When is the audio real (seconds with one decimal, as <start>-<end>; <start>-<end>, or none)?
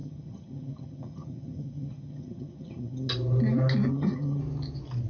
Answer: 3.1-3.9; 4.4-5.1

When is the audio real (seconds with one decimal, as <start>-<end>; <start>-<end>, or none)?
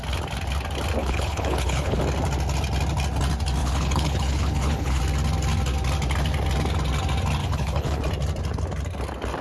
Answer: 0.0-1.0; 2.0-3.6; 5.0-7.4; 8.0-9.4